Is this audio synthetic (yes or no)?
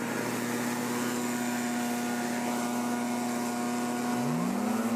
no